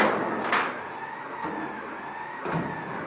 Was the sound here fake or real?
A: real